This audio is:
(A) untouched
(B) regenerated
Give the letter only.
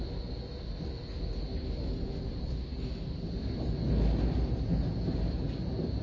A